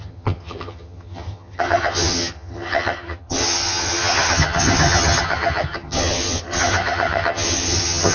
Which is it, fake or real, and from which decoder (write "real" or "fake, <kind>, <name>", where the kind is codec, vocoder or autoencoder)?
fake, vocoder, HiFi-GAN